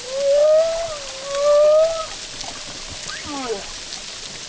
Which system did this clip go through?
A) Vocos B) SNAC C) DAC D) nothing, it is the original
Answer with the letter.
D